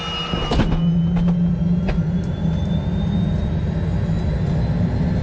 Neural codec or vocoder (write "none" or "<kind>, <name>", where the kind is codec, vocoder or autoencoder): none